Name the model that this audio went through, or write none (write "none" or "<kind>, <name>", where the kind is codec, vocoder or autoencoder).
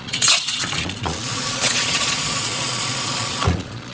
vocoder, Vocos